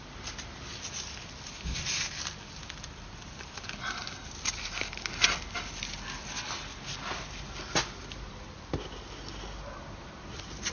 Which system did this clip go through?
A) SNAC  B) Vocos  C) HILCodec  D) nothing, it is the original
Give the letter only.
D